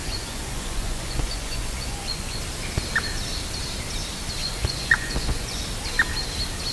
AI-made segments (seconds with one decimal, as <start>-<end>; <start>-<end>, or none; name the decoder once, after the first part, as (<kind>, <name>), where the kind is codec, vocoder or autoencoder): 0.0-2.4 (vocoder, Vocos); 4.4-5.6